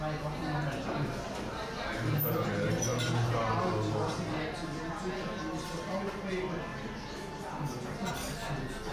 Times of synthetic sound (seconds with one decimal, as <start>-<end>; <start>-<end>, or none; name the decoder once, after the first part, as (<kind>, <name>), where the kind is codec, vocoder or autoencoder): none